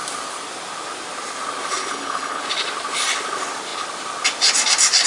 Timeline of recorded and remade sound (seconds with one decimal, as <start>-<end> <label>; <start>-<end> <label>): 0.0-1.8 recorded; 1.8-2.4 remade; 2.4-5.1 recorded